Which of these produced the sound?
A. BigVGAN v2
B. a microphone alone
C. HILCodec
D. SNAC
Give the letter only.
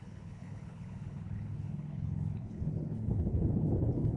C